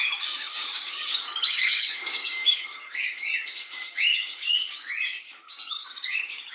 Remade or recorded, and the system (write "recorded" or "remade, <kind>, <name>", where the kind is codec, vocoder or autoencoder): remade, codec, DAC